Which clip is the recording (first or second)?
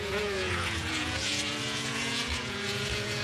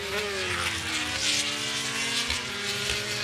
second